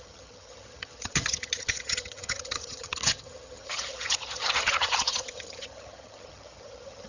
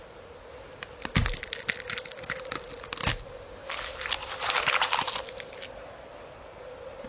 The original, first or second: second